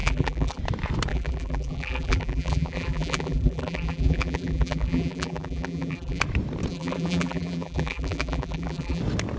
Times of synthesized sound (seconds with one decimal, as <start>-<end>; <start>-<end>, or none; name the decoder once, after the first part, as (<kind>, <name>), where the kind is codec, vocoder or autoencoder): 0.0-0.6 (vocoder, BigVGAN v2); 1.1-6.2; 6.7-9.0